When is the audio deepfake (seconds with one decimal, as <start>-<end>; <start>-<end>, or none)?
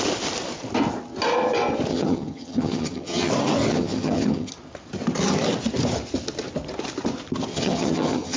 1.9-3.3; 3.7-4.5; 7.5-8.4